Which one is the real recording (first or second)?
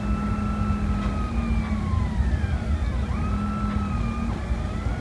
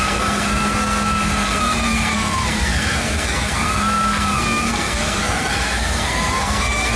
first